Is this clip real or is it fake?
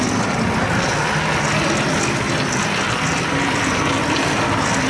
real